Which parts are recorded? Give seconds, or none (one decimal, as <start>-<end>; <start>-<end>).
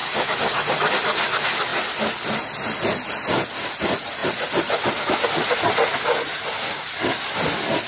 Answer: 0.9-7.9